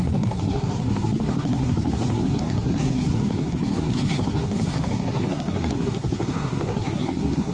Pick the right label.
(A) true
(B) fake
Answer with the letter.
B